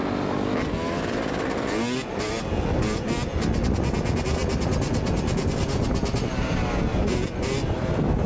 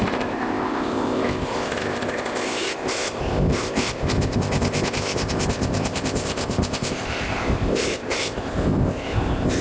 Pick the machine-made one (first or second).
second